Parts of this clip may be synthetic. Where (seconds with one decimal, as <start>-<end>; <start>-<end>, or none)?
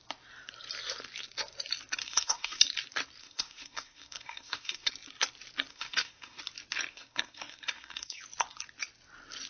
2.0-2.6; 3.2-4.9; 5.7-6.4; 6.9-8.2